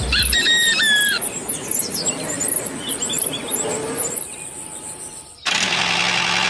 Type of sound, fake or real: real